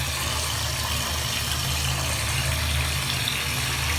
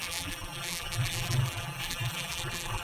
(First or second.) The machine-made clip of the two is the second